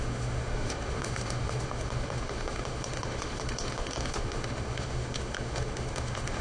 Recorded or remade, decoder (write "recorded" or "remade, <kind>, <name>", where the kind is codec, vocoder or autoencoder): remade, autoencoder, DAC-VAE